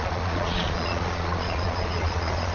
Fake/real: fake